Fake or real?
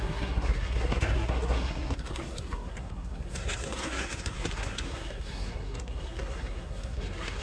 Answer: fake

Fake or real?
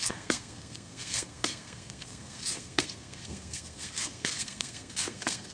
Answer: fake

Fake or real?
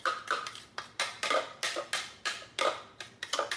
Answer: real